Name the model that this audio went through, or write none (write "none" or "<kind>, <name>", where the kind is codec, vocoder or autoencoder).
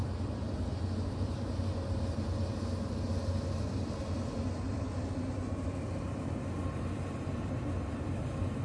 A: vocoder, BigVGAN v2